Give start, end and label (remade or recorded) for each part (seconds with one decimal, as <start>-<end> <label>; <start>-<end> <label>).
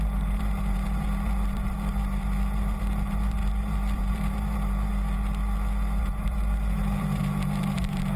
0.0-4.9 remade; 4.9-6.0 recorded; 6.0-8.2 remade